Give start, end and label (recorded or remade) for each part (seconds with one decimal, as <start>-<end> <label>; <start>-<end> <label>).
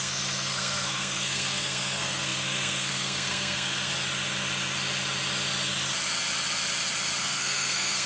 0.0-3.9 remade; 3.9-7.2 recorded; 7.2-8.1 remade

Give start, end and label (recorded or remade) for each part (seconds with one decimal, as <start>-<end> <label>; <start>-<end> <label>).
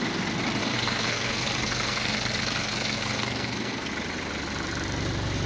0.0-0.6 recorded; 0.6-3.9 remade; 3.9-5.5 recorded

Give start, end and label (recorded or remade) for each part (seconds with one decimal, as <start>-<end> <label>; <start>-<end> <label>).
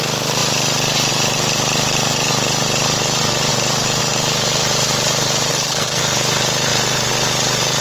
0.0-5.5 recorded; 5.5-6.0 remade; 6.0-7.8 recorded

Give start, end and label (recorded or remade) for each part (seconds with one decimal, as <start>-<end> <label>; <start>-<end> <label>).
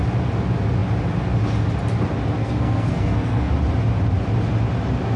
0.0-2.4 recorded; 2.4-3.5 remade; 3.5-5.2 recorded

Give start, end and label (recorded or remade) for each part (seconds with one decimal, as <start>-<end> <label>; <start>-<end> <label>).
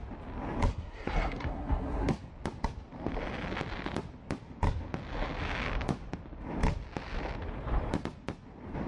0.0-0.7 recorded; 0.7-2.3 remade; 2.3-8.9 recorded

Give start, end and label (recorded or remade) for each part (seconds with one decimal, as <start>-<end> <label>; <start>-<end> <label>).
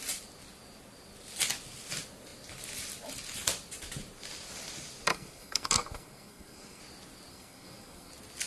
0.0-5.1 recorded; 5.1-6.8 remade; 6.8-7.3 recorded; 7.3-8.1 remade; 8.1-8.5 recorded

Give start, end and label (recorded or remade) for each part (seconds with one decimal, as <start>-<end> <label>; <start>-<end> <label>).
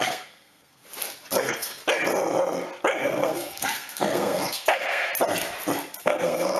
0.0-0.8 remade; 0.8-1.4 recorded; 1.4-1.8 remade; 1.8-3.0 recorded; 3.0-5.1 remade; 5.1-6.0 recorded; 6.0-6.6 remade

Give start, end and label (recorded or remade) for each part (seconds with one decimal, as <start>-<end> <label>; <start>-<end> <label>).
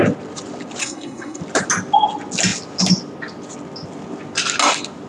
0.0-0.8 recorded; 0.8-1.4 remade; 1.4-5.1 recorded